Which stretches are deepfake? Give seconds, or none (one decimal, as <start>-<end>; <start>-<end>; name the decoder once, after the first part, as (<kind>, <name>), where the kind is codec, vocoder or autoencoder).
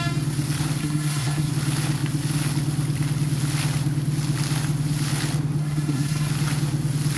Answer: 0.8-1.5 (codec, SNAC); 5.6-6.3